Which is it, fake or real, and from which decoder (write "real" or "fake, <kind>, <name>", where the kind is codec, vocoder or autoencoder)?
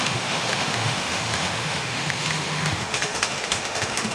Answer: fake, autoencoder, DAC-VAE